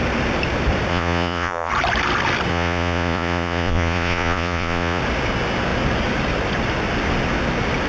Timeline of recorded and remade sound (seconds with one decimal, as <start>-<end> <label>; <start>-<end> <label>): 0.0-0.9 recorded; 0.9-1.7 remade; 1.7-2.5 recorded; 2.5-5.0 remade; 5.0-7.9 recorded